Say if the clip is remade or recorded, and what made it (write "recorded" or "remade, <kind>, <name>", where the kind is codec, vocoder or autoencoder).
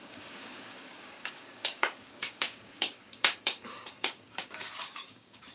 remade, codec, DAC